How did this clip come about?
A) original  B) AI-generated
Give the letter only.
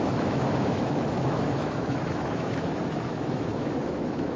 B